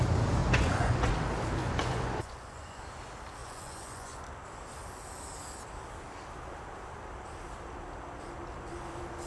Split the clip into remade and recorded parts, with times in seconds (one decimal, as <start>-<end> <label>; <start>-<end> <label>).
0.0-0.4 recorded; 0.4-1.1 remade; 1.1-1.6 recorded; 1.6-2.8 remade; 2.8-3.4 recorded; 3.4-4.2 remade; 4.2-9.3 recorded